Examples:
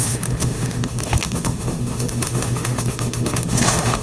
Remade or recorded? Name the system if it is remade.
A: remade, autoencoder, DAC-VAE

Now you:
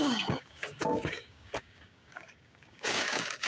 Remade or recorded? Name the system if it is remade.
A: remade, codec, DAC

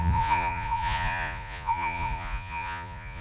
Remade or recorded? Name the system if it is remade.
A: remade, vocoder, Vocos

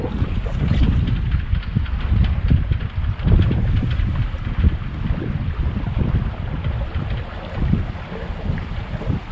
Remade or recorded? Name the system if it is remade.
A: recorded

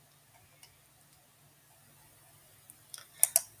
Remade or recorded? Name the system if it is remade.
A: recorded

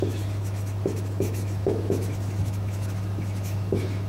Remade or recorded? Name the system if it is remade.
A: remade, autoencoder, DAC-VAE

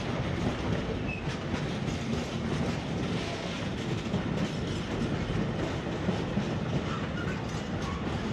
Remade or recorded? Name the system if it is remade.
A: recorded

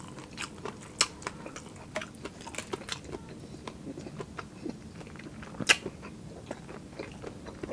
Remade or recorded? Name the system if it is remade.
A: recorded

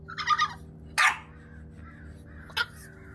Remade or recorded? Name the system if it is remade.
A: recorded